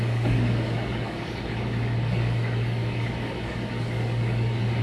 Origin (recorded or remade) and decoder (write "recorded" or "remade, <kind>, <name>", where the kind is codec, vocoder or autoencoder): remade, codec, DAC